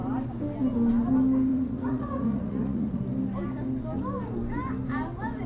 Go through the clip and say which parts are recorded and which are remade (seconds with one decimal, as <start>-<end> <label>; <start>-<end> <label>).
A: 0.0-1.5 recorded; 1.5-3.0 remade; 3.0-5.5 recorded